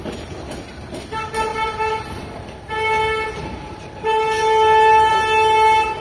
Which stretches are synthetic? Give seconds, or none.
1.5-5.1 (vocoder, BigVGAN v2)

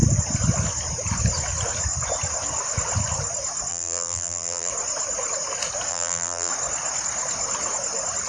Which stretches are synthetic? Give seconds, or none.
3.7-4.7 (vocoder, BigVGAN v2); 5.9-6.5

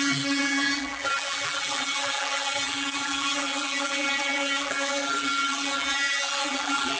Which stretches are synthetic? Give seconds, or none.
0.0-7.0 (vocoder, BigVGAN v2)

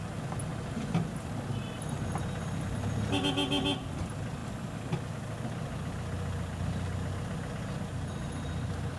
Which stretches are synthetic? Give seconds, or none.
0.5-1.3 (vocoder, BigVGAN v2)

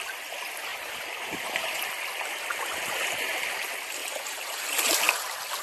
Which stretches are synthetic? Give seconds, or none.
0.7-1.8 (vocoder, BigVGAN v2); 4.0-5.0

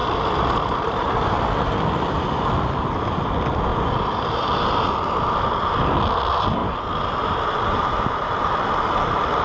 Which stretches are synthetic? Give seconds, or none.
0.0-3.3 (vocoder, BigVGAN v2); 3.7-4.7; 6.6-8.4